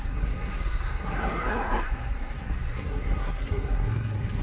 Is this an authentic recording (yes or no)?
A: no